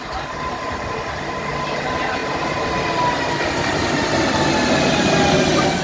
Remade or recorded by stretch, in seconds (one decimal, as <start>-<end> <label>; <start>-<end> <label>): 0.0-5.8 recorded